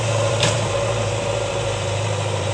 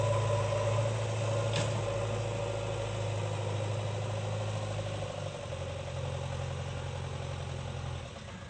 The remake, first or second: first